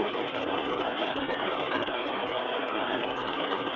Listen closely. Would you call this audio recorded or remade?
remade